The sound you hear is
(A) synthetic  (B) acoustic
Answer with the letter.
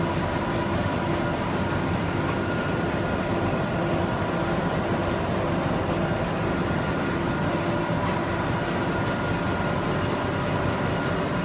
B